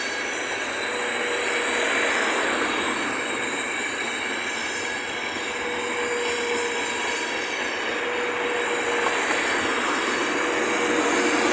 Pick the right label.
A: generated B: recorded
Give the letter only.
B